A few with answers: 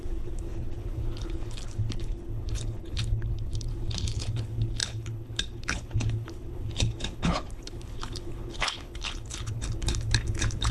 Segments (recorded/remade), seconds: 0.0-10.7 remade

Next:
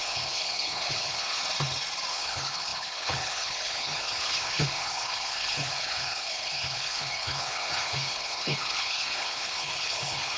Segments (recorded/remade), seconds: 0.0-1.4 remade; 1.4-2.1 recorded; 2.1-10.4 remade